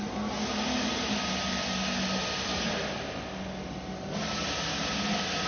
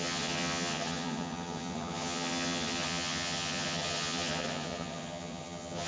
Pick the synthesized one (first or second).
second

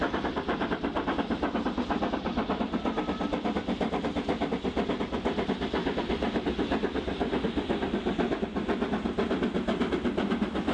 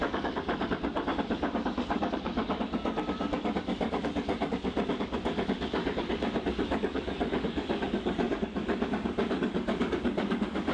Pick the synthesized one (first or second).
second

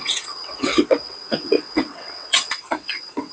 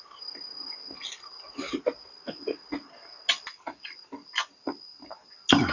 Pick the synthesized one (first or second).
first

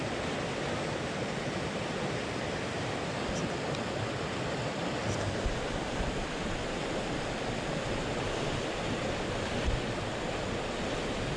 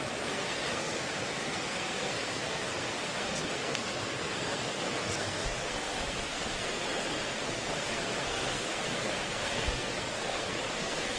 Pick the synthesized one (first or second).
second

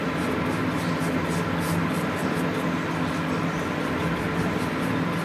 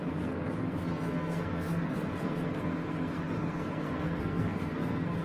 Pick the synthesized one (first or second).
second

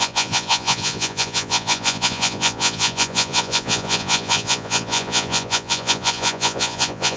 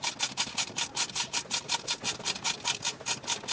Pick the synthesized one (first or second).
first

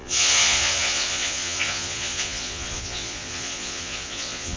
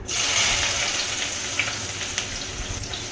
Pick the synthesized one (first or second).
first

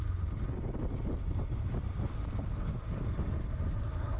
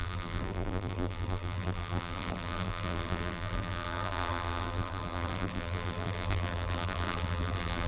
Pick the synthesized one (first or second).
second